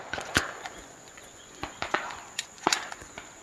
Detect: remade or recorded remade